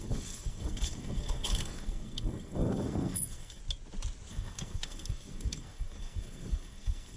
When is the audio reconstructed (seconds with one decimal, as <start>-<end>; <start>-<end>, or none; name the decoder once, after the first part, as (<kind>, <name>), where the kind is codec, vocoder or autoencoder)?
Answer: 0.0-3.6 (codec, SNAC); 4.3-7.2